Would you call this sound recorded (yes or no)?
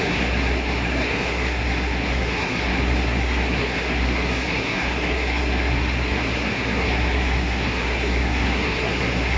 no